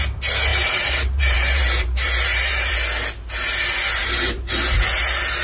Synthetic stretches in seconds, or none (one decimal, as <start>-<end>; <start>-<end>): 0.5-2.7; 4.0-4.5